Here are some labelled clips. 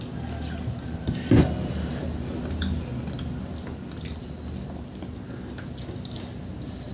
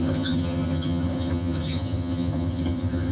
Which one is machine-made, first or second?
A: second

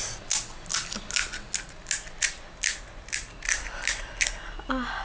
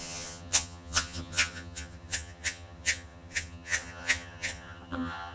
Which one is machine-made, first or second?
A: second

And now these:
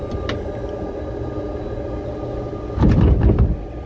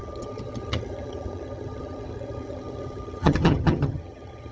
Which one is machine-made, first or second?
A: second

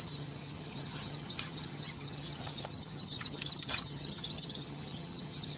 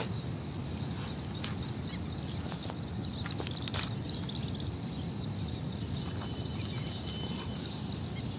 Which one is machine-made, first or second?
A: first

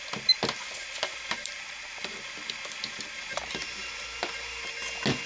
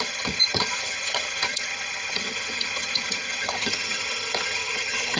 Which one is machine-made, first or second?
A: second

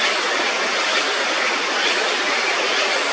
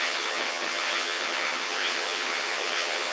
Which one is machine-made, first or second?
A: second